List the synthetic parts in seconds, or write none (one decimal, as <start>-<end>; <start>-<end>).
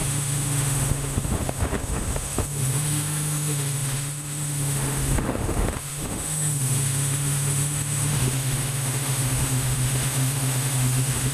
0.0-11.3